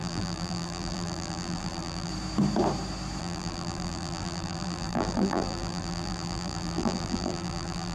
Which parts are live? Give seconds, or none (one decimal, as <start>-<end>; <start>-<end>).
2.1-3.2